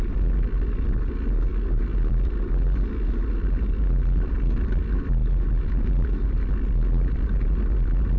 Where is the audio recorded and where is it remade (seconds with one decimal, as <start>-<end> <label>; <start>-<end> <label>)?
0.0-8.2 recorded